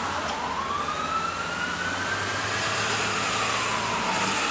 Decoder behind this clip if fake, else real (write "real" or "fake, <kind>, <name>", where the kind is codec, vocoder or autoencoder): real